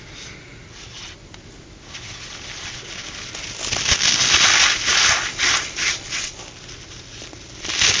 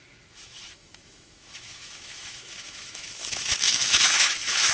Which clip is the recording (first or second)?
first